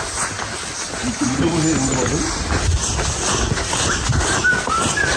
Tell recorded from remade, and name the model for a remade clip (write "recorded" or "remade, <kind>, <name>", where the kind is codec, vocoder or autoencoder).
recorded